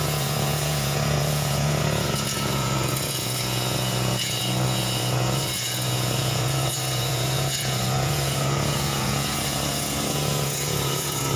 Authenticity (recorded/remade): remade